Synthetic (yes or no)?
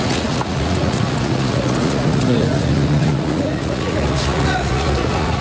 yes